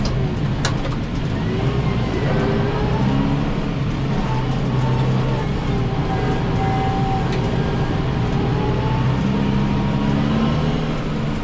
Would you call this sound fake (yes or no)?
no